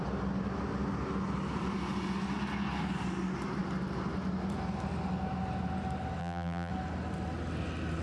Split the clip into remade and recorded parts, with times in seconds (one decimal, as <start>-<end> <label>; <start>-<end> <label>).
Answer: 0.0-6.2 recorded; 6.2-6.7 remade; 6.7-8.0 recorded